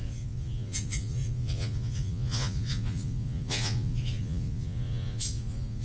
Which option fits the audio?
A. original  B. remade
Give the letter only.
B